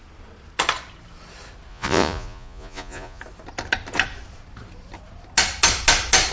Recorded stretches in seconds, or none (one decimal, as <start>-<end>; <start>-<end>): 0.0-1.7; 3.2-6.3